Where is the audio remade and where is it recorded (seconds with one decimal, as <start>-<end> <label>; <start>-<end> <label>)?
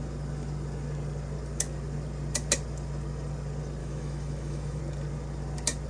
0.0-3.8 recorded; 3.8-4.8 remade; 4.8-5.9 recorded